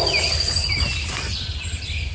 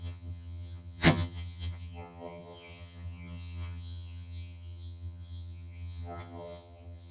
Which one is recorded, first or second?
first